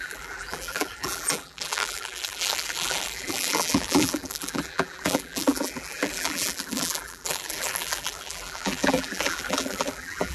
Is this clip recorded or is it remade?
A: remade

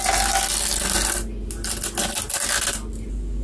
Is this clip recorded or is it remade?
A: recorded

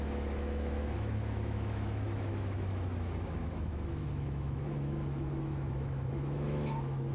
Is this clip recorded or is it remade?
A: remade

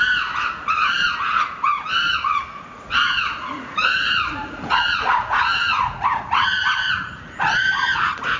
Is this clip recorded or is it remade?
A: remade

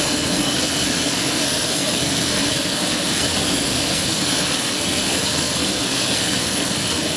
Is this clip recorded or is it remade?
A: remade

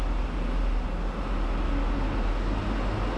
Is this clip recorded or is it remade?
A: recorded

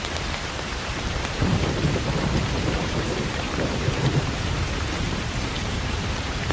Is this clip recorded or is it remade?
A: remade